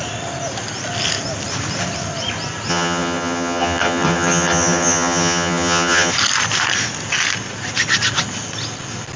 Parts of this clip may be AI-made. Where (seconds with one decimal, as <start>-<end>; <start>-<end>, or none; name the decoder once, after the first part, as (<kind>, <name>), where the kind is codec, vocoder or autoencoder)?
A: 2.7-6.1 (vocoder, HiFi-GAN)